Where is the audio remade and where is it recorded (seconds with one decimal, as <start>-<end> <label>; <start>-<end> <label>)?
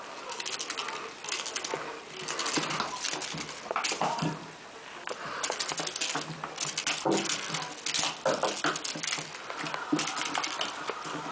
0.0-11.3 recorded